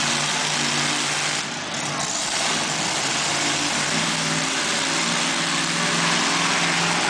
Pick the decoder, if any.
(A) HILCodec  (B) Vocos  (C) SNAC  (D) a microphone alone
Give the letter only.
D